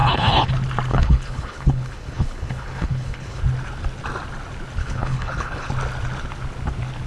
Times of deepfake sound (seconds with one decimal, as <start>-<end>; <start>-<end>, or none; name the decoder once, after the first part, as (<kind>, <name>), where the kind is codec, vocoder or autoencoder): 0.0-0.5 (codec, HILCodec); 0.9-3.4; 4.8-5.7